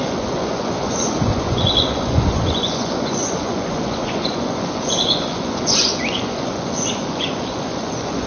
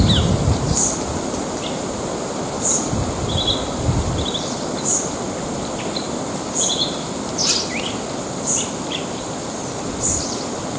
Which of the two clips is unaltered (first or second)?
second